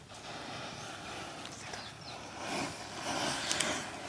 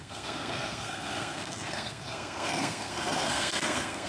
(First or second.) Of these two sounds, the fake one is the second